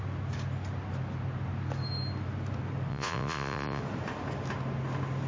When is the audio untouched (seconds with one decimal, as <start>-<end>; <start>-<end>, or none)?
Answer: 0.0-2.9; 3.8-5.3